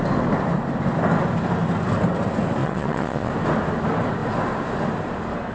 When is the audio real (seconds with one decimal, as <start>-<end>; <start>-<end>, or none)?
0.0-2.6; 3.3-5.5